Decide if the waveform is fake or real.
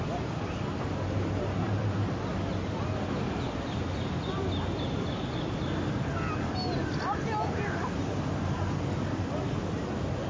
real